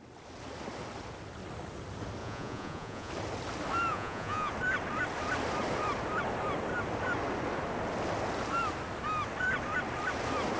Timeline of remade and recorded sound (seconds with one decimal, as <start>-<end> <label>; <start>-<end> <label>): 0.0-2.2 recorded; 2.2-3.1 remade; 3.1-3.9 recorded; 3.9-4.5 remade; 4.5-10.6 recorded